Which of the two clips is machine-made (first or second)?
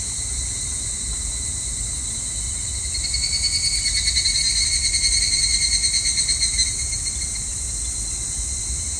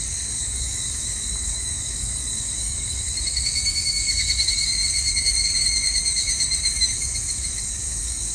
second